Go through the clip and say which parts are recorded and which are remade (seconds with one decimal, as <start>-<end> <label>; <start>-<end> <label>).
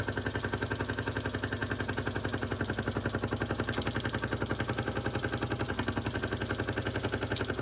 0.0-7.6 recorded